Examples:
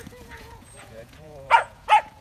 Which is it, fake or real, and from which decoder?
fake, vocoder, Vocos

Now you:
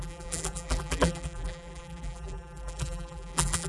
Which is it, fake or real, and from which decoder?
fake, vocoder, BigVGAN v2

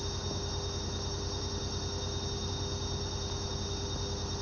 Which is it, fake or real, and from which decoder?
real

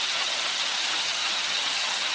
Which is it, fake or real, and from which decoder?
fake, vocoder, HiFi-GAN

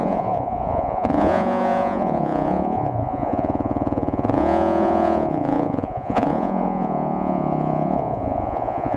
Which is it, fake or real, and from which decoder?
fake, vocoder, Vocos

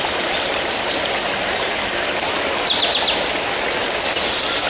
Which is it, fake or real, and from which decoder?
real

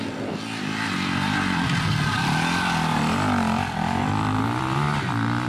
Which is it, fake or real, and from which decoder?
real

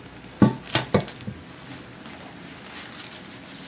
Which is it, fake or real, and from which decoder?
real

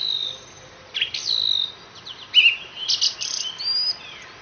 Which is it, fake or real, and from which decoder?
real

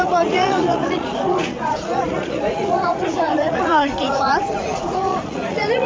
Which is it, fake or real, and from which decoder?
fake, vocoder, Vocos